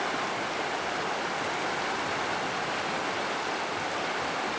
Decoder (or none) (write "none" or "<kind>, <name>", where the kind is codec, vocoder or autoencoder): none